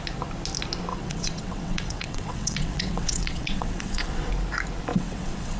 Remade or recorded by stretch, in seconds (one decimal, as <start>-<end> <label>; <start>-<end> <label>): 0.0-0.9 recorded; 0.9-4.3 remade; 4.3-4.9 recorded; 4.9-5.6 remade